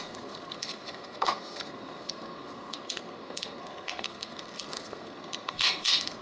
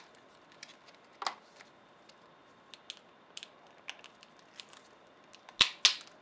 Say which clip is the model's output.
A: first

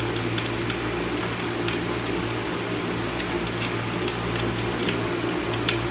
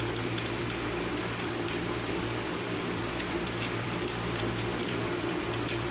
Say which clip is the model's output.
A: second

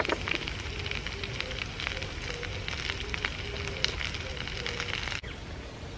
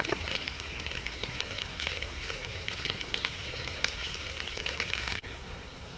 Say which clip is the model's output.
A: second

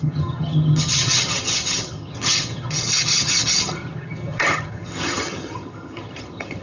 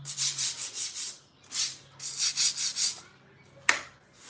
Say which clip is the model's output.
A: first